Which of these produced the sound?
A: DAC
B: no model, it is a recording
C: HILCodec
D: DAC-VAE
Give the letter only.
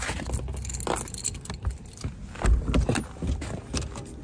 B